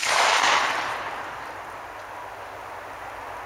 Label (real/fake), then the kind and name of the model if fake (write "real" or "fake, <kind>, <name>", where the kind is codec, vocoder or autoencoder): real